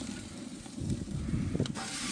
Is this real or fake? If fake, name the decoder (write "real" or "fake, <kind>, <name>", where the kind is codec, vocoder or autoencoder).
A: fake, vocoder, BigVGAN v2